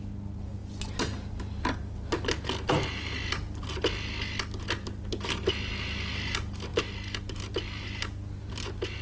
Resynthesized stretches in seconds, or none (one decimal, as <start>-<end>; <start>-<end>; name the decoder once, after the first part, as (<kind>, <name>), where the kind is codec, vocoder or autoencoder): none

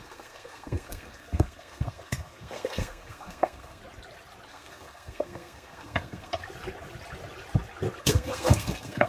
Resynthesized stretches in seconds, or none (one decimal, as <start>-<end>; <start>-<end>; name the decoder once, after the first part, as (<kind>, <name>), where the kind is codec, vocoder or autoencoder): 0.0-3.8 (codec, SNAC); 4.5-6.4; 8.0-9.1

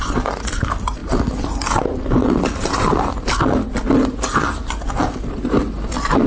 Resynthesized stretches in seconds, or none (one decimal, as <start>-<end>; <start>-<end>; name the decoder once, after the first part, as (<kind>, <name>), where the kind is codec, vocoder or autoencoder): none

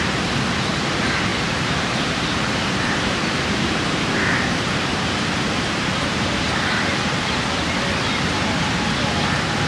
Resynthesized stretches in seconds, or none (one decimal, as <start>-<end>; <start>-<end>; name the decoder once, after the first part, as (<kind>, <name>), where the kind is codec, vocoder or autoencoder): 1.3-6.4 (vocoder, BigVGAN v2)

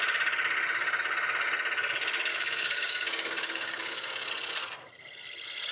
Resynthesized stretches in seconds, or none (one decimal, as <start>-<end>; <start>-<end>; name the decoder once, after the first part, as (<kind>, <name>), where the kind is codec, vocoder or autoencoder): 2.3-4.3 (codec, DAC)

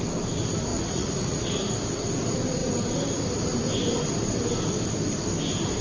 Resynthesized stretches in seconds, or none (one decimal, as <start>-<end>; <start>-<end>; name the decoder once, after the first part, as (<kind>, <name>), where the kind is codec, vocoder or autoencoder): 0.7-1.7 (vocoder, Vocos)